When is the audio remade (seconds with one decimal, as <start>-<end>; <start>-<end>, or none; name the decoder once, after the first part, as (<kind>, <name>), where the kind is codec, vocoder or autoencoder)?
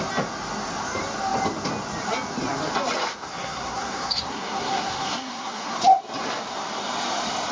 3.2-5.8 (codec, SNAC)